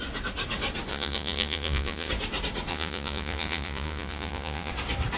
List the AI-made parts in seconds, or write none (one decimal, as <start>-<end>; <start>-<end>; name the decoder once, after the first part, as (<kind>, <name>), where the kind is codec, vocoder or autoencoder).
0.9-2.1 (vocoder, Vocos); 2.7-4.7